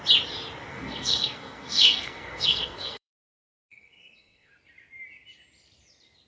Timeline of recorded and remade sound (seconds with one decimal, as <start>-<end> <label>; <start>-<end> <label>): 0.0-0.7 recorded; 0.7-4.5 remade; 4.5-6.3 recorded